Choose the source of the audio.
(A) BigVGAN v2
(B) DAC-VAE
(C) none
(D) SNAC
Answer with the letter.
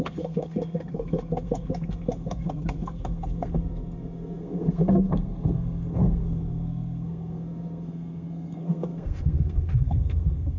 D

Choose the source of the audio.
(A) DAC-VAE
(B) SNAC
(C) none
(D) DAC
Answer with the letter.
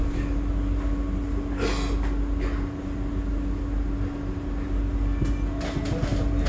C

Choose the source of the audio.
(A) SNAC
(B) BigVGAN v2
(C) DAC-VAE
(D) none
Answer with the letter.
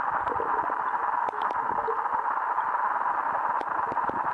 D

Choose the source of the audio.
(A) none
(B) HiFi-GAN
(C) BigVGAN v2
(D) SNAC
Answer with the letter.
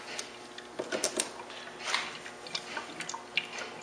A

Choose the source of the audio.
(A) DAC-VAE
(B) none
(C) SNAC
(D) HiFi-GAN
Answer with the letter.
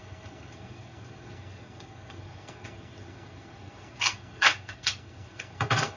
C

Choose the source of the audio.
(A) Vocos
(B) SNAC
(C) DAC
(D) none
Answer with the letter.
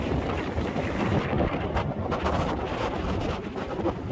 D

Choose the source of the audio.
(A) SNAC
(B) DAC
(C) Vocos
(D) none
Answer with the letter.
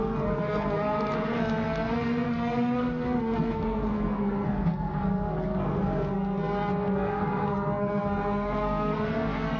A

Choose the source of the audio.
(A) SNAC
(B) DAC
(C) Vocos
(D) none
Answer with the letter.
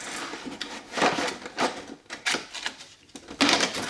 D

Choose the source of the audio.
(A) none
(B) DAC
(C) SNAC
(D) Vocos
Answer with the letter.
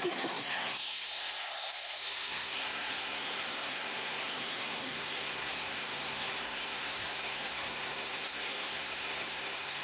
C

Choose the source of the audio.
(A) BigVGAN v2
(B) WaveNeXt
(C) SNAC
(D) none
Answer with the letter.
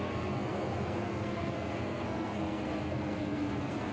C